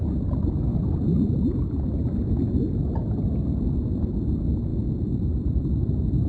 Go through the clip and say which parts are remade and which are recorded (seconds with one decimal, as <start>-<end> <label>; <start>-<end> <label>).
0.0-0.7 recorded; 0.7-3.4 remade; 3.4-4.7 recorded; 4.7-6.3 remade